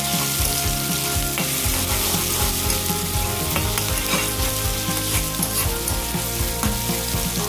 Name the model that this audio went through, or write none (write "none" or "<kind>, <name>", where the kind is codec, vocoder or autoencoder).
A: none